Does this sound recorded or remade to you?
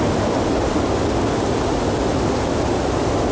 recorded